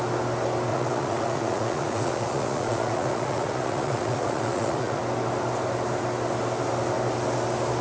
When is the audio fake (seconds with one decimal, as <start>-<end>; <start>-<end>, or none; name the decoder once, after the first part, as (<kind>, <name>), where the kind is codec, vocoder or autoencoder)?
0.7-5.0 (vocoder, Vocos)